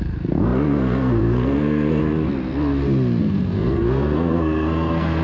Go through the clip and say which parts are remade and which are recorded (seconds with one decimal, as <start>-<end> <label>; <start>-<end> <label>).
0.0-2.0 remade; 2.0-3.2 recorded; 3.2-5.2 remade